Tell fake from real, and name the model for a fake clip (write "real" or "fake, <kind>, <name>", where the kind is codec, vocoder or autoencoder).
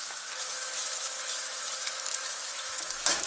fake, autoencoder, DAC-VAE